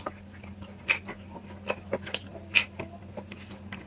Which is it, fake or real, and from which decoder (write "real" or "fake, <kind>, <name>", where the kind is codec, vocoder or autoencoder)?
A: real